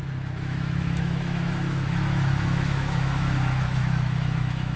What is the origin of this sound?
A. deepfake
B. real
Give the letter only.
A